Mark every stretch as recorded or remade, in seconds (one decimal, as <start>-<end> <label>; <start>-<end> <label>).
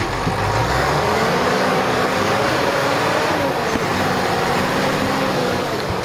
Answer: 0.0-0.6 recorded; 0.6-2.5 remade; 2.5-5.4 recorded; 5.4-6.0 remade